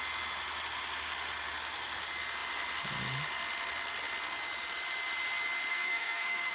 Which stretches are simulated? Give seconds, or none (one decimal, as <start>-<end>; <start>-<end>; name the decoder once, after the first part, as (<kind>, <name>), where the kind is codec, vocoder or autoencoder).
5.7-6.5 (codec, SNAC)